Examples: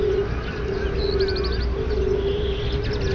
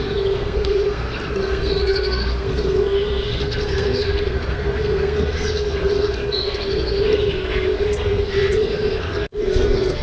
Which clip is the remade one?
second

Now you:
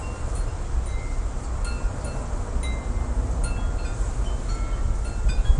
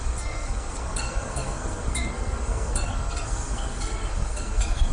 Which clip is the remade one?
second